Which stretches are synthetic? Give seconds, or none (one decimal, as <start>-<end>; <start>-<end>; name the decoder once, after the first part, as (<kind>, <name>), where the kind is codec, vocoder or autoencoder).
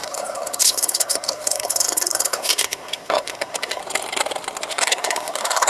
0.0-3.8 (codec, SNAC); 4.7-5.7